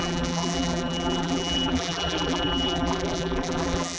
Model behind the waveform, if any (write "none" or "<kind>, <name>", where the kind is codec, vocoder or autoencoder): vocoder, BigVGAN v2